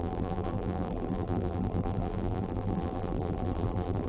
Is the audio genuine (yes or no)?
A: no